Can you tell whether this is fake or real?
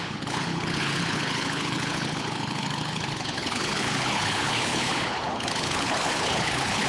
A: fake